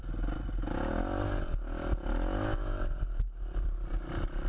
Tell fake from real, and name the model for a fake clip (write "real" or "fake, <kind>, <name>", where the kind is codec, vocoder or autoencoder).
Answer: real